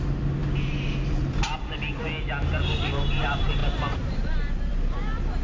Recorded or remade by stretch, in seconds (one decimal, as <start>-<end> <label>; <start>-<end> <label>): 0.0-3.6 recorded; 3.6-5.4 remade